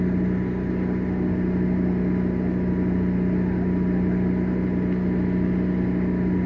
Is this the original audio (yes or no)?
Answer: yes